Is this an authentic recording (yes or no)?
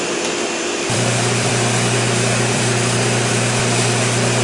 no